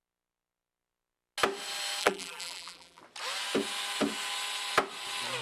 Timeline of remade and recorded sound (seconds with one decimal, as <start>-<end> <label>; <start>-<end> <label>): 0.0-2.0 recorded; 2.0-3.0 remade; 3.0-5.4 recorded